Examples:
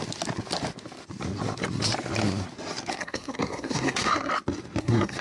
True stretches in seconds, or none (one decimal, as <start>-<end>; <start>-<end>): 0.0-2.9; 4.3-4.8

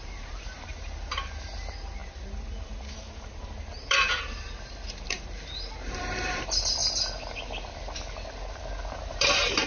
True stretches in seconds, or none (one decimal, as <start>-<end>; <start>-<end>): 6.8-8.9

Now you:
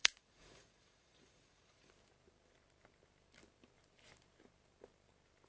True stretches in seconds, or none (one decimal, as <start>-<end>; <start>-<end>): 1.9-5.5